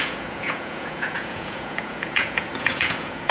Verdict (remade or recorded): remade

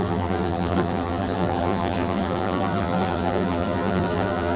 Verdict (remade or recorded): remade